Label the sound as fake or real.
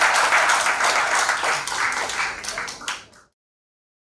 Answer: real